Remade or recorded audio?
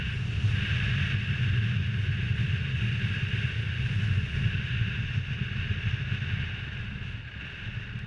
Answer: recorded